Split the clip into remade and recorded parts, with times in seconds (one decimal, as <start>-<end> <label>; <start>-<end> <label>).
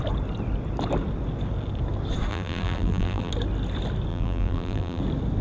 0.0-2.3 recorded; 2.3-3.3 remade; 3.3-4.1 recorded; 4.1-5.0 remade; 5.0-5.4 recorded